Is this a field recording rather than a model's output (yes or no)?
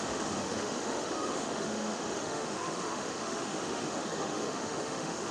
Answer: no